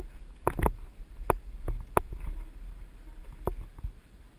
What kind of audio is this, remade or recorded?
recorded